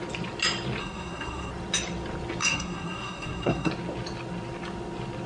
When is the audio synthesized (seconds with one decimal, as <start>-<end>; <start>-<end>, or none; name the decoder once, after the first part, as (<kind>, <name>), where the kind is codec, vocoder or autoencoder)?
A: 0.8-1.5 (codec, SNAC); 2.4-3.7